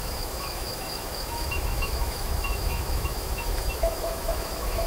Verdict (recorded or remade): remade